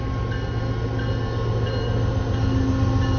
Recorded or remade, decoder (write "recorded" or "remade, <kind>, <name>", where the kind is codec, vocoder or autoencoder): recorded